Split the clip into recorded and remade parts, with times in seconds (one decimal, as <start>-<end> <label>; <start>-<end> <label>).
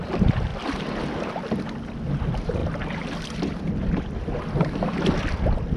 0.0-5.8 recorded